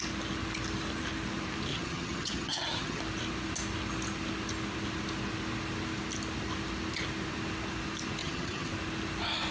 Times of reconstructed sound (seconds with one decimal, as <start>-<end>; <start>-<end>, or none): 1.7-3.0; 8.2-8.7